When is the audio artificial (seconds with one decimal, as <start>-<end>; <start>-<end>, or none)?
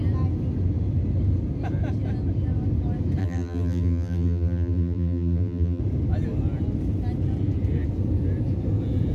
3.2-5.8